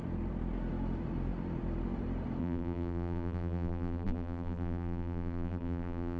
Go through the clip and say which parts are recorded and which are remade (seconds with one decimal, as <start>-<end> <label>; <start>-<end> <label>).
0.0-2.4 recorded; 2.4-6.2 remade

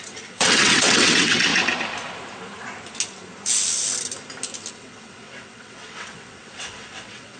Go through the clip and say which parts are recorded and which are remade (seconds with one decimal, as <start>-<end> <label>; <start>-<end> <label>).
0.0-1.5 remade; 1.5-4.7 recorded; 4.7-7.4 remade

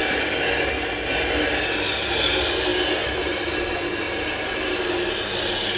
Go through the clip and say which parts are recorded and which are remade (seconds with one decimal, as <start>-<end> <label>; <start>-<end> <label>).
0.0-5.8 recorded

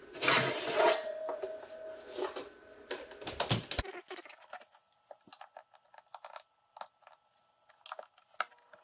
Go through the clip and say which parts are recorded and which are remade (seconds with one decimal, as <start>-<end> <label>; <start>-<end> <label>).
0.0-8.8 recorded

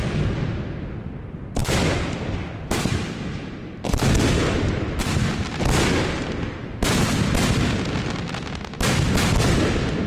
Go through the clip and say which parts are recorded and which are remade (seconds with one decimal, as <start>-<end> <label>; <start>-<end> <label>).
0.0-10.1 recorded

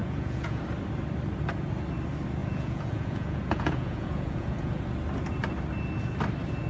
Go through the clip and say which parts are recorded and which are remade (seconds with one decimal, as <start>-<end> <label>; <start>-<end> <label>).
0.0-0.6 remade; 0.6-2.4 recorded; 2.4-4.8 remade; 4.8-6.7 recorded

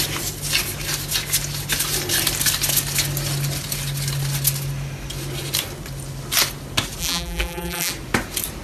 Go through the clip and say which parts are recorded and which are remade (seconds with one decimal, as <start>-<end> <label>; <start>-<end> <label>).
0.0-7.0 recorded; 7.0-7.9 remade; 7.9-8.6 recorded